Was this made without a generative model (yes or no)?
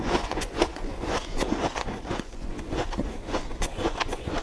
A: no